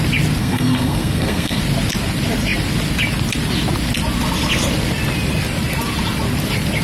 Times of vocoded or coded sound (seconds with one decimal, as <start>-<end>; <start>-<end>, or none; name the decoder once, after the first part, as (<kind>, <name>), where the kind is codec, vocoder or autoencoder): 0.4-1.6 (codec, SNAC)